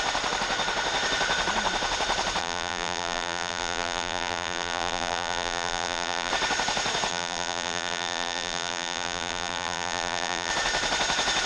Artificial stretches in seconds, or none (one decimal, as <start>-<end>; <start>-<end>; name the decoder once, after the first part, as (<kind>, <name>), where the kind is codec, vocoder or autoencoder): 2.4-6.3 (vocoder, BigVGAN v2); 7.1-10.5